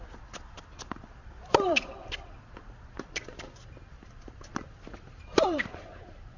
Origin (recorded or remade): remade